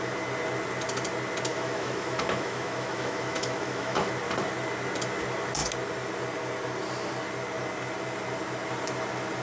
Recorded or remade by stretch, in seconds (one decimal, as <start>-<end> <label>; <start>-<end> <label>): 0.0-1.5 recorded; 1.5-4.1 remade; 4.1-9.4 recorded